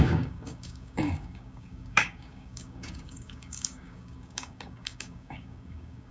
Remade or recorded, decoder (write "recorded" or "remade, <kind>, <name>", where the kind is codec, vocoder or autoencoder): remade, codec, DAC